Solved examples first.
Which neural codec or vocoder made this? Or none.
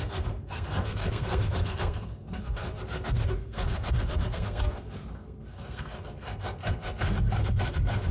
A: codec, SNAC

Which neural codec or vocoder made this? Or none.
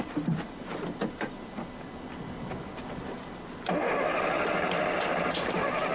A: none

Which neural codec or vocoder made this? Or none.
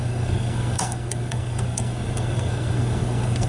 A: codec, SNAC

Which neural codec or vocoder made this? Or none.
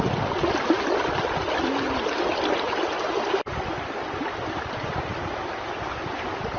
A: none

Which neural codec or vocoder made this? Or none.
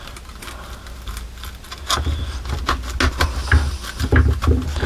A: none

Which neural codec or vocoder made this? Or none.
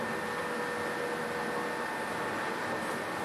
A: none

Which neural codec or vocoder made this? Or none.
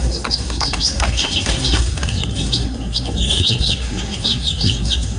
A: codec, SNAC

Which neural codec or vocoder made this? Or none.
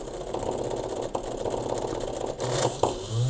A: none